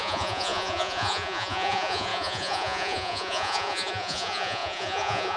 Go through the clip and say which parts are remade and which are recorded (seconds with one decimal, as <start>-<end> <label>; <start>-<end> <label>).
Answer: 0.0-5.4 remade